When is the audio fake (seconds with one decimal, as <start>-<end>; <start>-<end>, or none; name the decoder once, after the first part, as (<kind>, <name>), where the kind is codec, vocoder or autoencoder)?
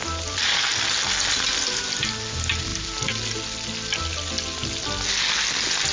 none